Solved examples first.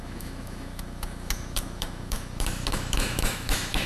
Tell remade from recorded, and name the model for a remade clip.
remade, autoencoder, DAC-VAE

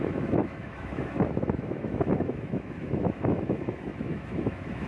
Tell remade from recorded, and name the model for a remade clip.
remade, autoencoder, DAC-VAE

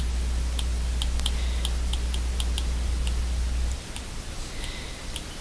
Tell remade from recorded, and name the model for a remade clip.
recorded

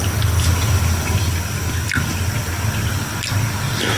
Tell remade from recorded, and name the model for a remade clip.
recorded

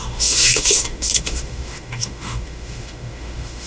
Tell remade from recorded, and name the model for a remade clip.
remade, autoencoder, DAC-VAE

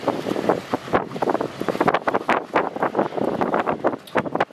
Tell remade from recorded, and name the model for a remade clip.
recorded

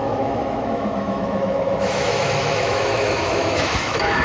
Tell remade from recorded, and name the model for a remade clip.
remade, autoencoder, DAC-VAE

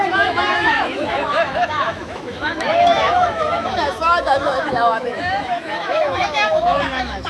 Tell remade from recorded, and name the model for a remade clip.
remade, autoencoder, DAC-VAE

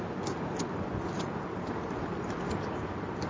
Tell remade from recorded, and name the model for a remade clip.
recorded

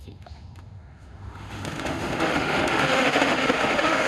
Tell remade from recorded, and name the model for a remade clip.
remade, autoencoder, DAC-VAE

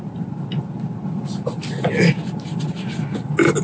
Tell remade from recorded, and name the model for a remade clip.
recorded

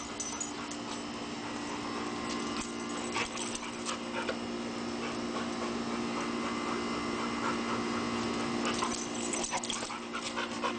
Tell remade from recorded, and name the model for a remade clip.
recorded